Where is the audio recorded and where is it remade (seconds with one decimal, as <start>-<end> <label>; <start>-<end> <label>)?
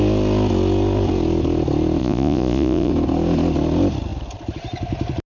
0.0-2.0 recorded; 2.0-2.9 remade; 2.9-5.3 recorded